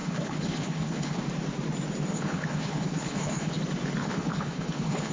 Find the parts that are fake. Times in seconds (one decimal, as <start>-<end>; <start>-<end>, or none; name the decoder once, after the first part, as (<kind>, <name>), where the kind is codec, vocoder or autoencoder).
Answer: 0.0-1.2 (codec, HILCodec); 2.1-3.6; 4.0-5.1